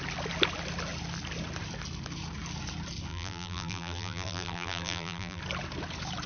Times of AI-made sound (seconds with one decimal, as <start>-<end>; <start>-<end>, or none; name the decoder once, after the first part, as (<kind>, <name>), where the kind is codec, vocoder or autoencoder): 3.1-5.4 (vocoder, BigVGAN v2)

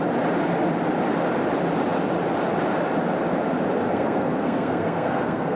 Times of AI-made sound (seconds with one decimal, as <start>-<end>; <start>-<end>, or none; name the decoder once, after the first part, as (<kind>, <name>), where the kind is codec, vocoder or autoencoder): 3.9-5.6 (codec, SNAC)